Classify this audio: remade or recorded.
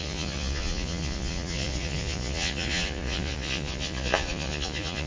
remade